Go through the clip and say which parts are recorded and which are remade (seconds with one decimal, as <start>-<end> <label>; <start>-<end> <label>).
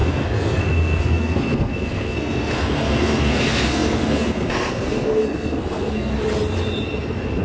0.0-6.1 remade; 6.1-7.4 recorded